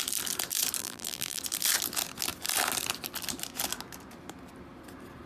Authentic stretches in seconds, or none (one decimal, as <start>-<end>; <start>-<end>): 0.0-0.8; 1.4-5.3